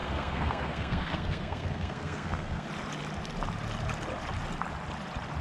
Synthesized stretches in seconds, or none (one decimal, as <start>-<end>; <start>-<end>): 0.0-2.7

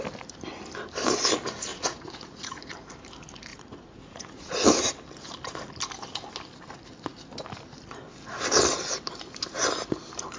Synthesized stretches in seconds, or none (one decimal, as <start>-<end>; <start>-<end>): 1.7-2.6; 3.5-4.5